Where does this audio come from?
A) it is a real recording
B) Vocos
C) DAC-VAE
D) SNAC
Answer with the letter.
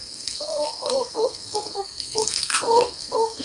D